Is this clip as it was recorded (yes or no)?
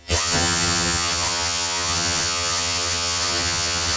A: no